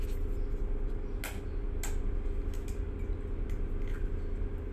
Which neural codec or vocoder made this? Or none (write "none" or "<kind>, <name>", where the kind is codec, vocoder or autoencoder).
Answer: none